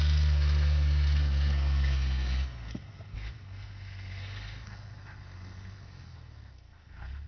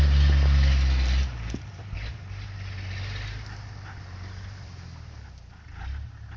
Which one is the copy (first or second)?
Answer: first